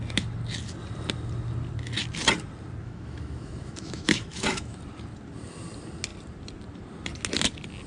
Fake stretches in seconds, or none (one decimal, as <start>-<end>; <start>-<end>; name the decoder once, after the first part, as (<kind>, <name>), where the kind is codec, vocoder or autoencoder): 2.8-4.8 (autoencoder, DAC-VAE)